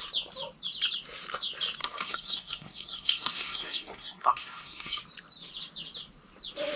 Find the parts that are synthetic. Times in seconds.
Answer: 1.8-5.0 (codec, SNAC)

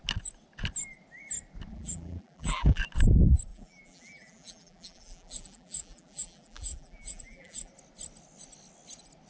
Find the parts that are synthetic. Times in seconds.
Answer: 1.7-2.8 (vocoder, BigVGAN v2); 3.5-7.7

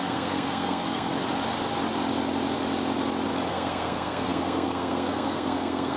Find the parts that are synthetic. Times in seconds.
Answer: 0.0-1.1 (codec, SNAC); 3.5-6.0